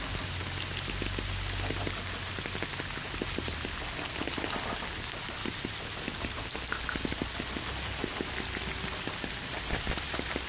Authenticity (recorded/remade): recorded